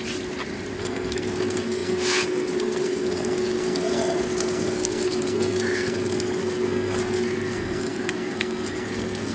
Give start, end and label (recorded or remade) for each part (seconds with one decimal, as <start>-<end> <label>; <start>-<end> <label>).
0.0-0.8 recorded; 0.8-9.3 remade